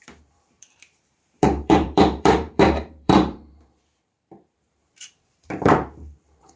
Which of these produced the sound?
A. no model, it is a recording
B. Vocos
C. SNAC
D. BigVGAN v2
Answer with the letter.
D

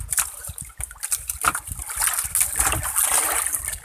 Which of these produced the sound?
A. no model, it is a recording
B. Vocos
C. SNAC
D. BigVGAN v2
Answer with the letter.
A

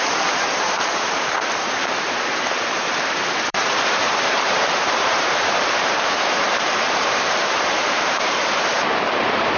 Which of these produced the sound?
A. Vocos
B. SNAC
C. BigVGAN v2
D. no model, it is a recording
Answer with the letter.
C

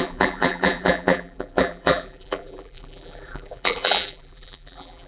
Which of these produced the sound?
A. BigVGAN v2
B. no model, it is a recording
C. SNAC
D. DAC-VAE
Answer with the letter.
A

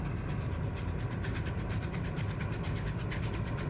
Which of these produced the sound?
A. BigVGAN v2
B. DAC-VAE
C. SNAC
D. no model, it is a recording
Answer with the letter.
D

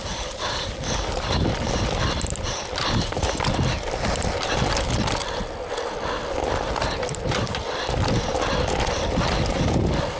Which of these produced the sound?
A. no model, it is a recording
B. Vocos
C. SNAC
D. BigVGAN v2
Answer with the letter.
A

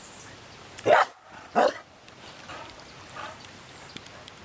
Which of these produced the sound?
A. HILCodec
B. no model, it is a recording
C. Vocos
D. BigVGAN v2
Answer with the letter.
B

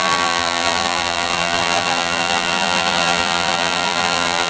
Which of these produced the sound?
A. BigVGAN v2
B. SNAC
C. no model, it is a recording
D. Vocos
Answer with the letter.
A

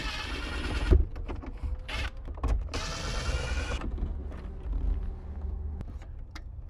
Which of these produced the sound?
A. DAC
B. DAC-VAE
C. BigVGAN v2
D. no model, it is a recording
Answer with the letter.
D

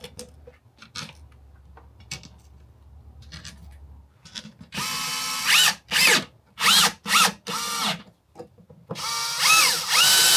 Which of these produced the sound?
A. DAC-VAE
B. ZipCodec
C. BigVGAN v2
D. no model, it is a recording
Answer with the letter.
D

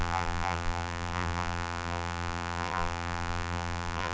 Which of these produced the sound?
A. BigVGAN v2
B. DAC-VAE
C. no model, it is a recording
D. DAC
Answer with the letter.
A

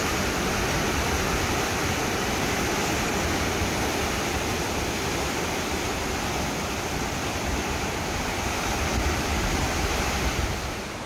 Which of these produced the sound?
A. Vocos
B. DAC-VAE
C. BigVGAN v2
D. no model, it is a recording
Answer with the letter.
C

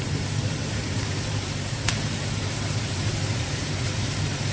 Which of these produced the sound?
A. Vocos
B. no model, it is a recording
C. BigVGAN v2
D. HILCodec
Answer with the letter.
C